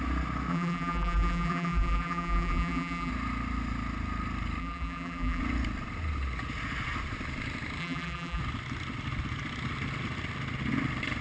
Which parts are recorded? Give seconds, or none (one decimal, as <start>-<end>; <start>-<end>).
0.0-0.5; 3.1-4.6; 5.4-7.8; 8.4-11.2